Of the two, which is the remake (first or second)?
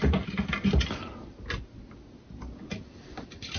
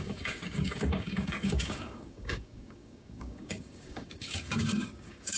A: second